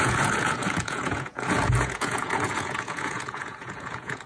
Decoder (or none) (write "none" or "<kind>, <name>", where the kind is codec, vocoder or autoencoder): vocoder, Vocos